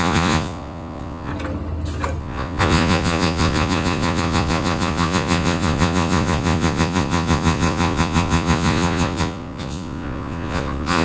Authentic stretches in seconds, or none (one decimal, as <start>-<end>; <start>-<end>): 1.3-2.2